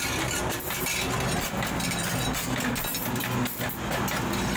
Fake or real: real